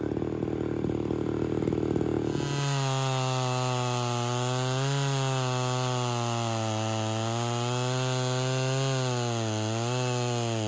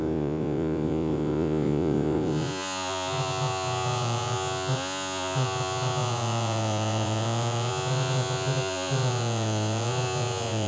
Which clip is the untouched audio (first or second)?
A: first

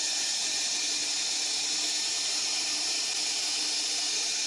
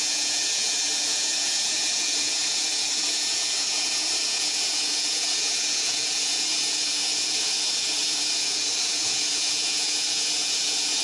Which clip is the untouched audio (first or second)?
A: first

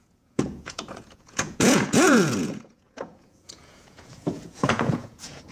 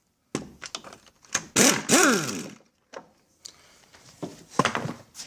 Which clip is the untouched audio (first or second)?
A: second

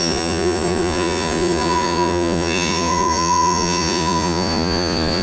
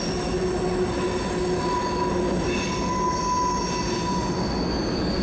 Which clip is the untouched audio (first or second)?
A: second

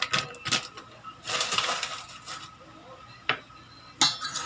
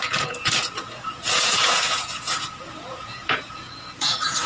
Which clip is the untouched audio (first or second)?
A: first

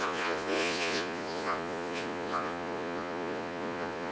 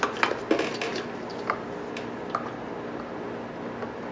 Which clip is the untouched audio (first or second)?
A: second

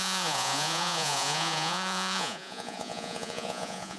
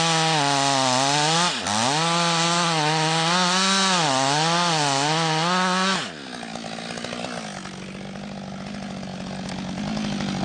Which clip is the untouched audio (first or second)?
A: second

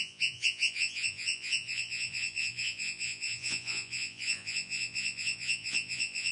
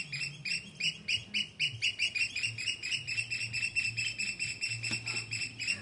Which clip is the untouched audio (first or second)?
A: second